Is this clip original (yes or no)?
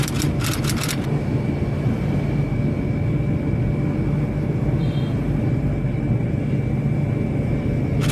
yes